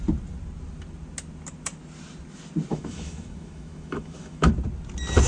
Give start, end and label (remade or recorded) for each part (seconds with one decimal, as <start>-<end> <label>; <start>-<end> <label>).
0.0-2.7 recorded; 2.7-4.5 remade; 4.5-5.3 recorded